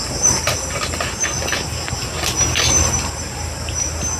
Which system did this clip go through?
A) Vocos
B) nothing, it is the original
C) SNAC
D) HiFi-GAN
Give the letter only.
B